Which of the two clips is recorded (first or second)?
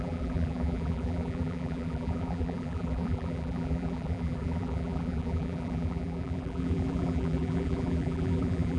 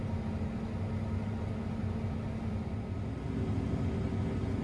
second